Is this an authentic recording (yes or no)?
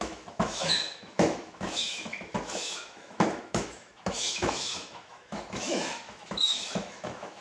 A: no